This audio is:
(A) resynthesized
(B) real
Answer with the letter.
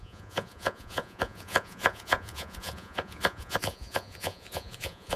A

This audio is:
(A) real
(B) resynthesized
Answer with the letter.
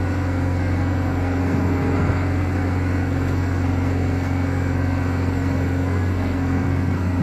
B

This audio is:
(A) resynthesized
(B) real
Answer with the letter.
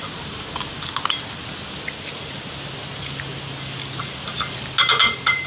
B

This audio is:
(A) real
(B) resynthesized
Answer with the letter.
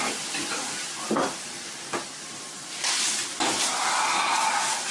A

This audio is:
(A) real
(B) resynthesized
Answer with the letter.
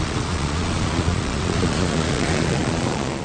B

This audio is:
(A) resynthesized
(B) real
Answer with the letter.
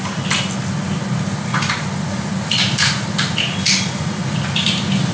B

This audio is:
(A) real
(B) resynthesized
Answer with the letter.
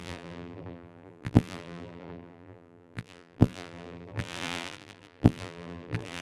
B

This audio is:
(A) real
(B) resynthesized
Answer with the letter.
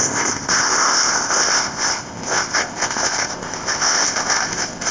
B